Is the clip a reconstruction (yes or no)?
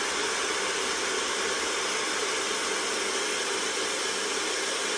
no